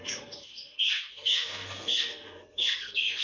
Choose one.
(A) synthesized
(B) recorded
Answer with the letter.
A